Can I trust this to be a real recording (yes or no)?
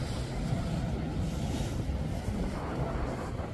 yes